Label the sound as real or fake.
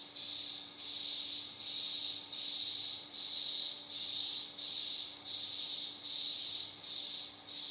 real